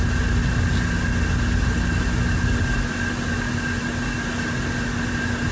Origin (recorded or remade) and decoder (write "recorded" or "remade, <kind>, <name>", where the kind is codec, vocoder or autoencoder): recorded